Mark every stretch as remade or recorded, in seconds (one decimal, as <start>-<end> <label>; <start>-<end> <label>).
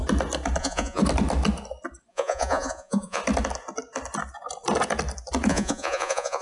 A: 0.0-0.6 recorded; 0.6-1.0 remade; 1.0-2.1 recorded; 2.1-3.2 remade; 3.2-5.5 recorded; 5.5-6.4 remade